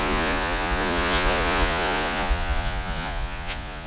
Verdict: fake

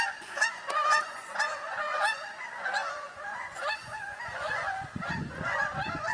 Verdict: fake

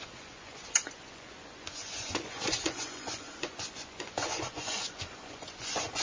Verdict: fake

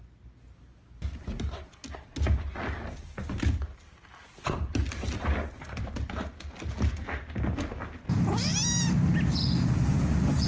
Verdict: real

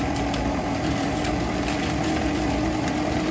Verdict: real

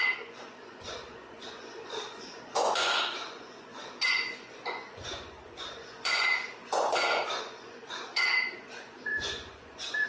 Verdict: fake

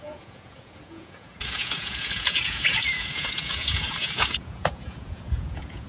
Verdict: fake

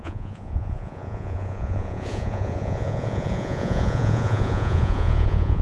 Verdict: fake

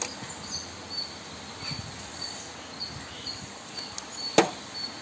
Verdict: real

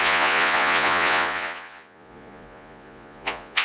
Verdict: fake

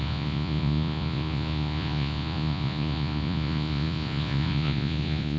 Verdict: fake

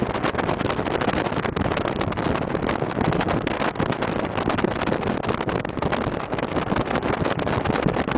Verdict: real